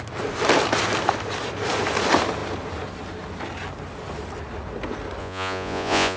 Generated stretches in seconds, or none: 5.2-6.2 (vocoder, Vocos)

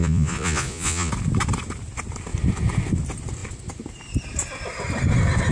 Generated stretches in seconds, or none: 0.0-1.1 (vocoder, Vocos)

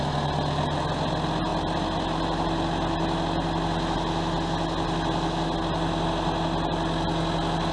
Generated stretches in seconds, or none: none

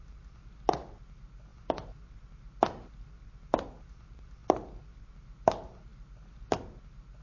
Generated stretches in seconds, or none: none